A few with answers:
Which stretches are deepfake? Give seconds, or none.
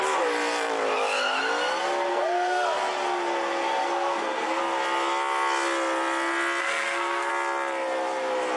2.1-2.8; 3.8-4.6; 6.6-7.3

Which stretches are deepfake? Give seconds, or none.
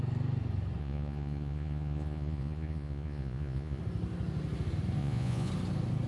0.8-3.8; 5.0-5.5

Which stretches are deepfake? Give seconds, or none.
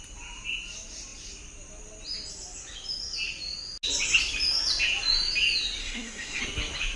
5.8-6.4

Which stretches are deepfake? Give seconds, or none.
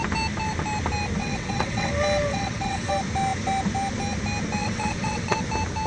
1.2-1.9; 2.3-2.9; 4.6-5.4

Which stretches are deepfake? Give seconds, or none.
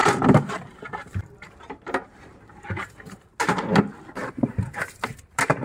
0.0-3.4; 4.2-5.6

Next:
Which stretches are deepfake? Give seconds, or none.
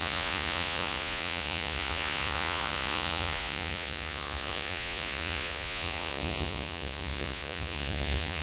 0.0-8.4